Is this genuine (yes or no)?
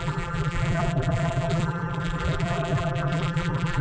no